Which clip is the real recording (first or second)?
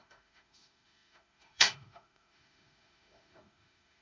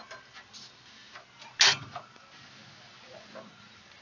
second